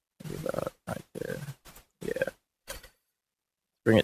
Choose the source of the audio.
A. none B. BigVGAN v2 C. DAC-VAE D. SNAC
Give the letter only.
A